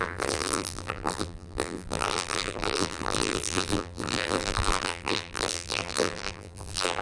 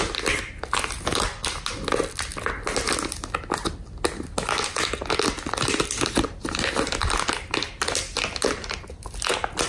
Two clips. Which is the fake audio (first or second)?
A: first